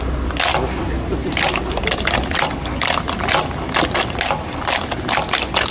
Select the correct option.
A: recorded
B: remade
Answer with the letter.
A